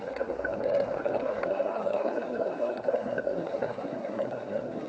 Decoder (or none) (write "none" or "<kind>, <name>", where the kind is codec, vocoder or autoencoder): codec, SNAC